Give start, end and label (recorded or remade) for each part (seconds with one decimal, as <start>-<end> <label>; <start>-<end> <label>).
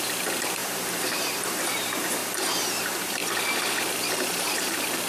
0.0-3.2 remade; 3.2-4.0 recorded; 4.0-5.1 remade